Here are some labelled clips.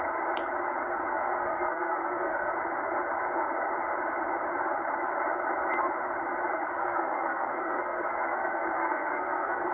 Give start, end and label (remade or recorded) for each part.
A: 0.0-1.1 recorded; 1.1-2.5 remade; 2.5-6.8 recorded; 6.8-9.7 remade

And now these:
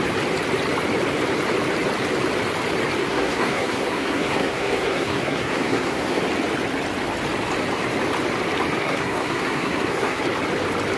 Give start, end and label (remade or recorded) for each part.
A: 0.0-3.0 recorded; 3.0-6.2 remade; 6.2-8.8 recorded; 8.8-10.2 remade; 10.2-11.0 recorded

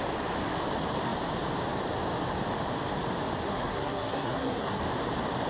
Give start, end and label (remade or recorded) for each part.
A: 0.0-3.5 recorded; 3.5-4.8 remade; 4.8-5.5 recorded